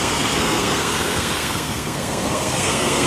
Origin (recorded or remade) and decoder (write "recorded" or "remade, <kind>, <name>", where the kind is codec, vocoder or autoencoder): remade, codec, SNAC